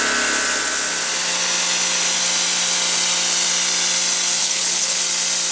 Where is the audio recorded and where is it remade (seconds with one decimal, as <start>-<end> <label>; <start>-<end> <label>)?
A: 0.0-4.4 recorded; 4.4-5.0 remade; 5.0-5.5 recorded